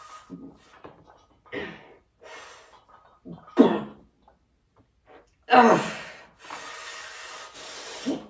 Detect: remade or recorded recorded